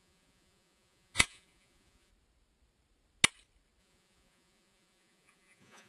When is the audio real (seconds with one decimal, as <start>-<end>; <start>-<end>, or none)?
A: 2.1-3.8